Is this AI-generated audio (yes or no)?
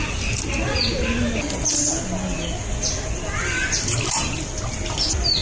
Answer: no